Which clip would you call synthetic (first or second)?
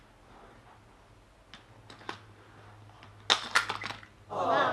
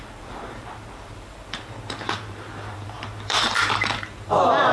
second